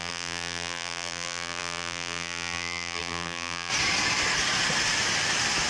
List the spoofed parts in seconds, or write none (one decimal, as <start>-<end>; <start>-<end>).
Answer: 0.0-3.7